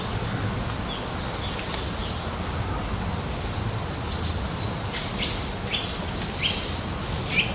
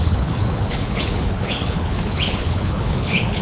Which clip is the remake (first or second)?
second